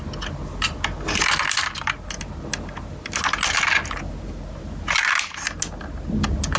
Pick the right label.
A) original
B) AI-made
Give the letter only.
A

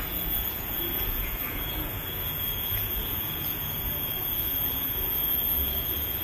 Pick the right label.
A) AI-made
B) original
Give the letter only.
A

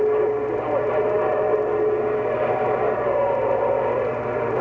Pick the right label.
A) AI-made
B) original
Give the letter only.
B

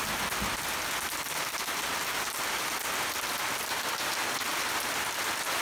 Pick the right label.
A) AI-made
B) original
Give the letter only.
B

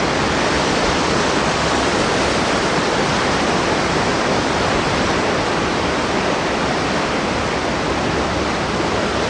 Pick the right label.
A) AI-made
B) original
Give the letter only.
B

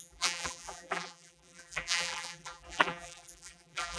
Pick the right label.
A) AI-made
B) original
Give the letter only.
A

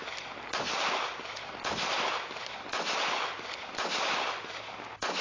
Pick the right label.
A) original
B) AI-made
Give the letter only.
A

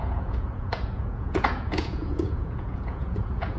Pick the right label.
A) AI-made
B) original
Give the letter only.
A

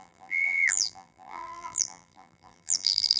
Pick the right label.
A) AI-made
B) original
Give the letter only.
A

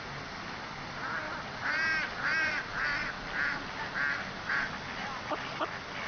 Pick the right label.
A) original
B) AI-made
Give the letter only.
A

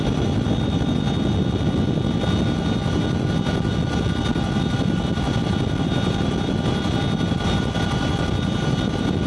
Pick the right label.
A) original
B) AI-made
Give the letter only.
A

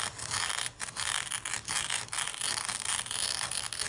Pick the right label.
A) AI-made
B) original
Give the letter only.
B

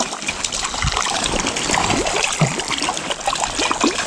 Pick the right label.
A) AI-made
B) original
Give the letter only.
B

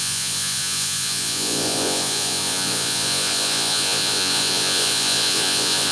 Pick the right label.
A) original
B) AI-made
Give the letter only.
B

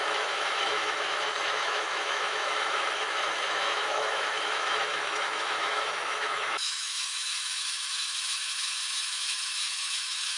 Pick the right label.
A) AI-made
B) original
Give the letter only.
A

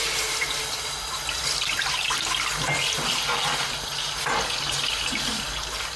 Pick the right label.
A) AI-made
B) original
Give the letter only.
B